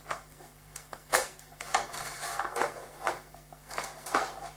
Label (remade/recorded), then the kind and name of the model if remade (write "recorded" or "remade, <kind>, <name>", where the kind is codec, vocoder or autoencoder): remade, codec, SNAC